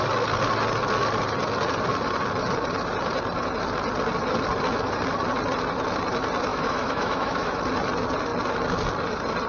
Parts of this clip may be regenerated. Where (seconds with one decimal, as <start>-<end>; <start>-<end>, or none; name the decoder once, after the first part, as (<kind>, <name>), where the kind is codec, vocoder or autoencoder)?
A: 6.5-7.6 (autoencoder, DAC-VAE)